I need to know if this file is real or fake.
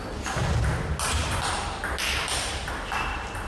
real